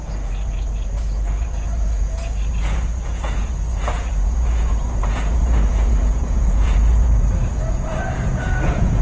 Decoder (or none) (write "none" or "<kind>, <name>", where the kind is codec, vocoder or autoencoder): vocoder, Vocos